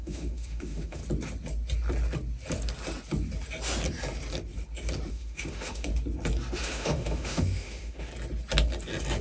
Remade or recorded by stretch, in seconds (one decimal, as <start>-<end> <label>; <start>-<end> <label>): 0.0-1.0 remade; 1.0-5.1 recorded; 5.1-5.9 remade; 5.9-6.6 recorded; 6.6-8.1 remade; 8.1-9.2 recorded